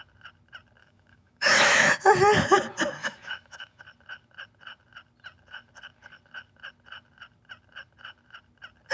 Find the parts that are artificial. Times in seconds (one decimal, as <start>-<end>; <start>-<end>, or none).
0.8-2.1; 3.0-3.8